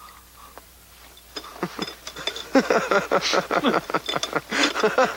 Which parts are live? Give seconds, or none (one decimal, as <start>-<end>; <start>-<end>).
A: 0.0-5.2